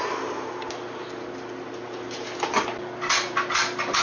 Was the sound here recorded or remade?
recorded